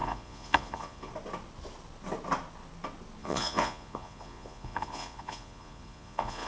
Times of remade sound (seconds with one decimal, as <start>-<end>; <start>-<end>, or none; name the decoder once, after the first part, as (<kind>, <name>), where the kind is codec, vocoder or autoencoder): 0.0-1.1 (vocoder, Vocos); 3.2-6.5